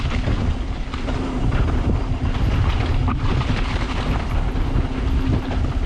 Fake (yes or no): no